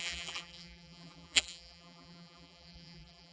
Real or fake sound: fake